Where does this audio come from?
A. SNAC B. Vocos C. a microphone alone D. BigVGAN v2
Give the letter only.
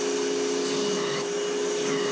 C